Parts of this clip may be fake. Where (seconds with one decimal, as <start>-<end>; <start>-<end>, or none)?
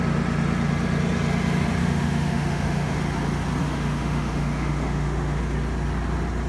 1.8-3.0; 3.6-5.4